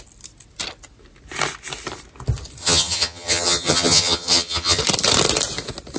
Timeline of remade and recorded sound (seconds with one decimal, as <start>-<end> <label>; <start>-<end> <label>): 0.0-2.6 recorded; 2.6-4.8 remade; 4.8-6.0 recorded